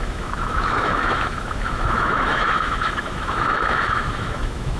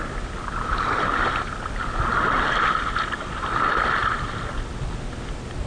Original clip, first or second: second